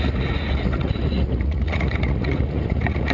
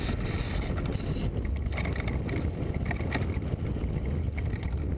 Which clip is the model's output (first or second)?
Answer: first